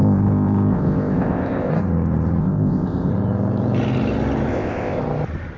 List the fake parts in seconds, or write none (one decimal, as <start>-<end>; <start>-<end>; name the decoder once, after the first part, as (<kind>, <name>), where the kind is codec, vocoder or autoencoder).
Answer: 0.0-1.7 (codec, ZipCodec); 2.4-3.1; 4.5-5.0